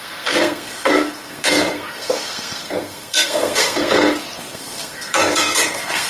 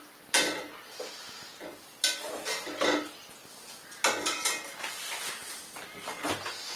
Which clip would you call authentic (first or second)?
second